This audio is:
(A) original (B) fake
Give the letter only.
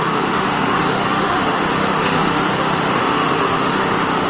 B